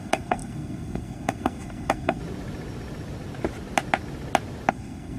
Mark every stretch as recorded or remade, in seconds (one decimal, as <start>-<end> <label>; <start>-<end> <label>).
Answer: 0.0-2.2 remade; 2.2-4.7 recorded; 4.7-5.2 remade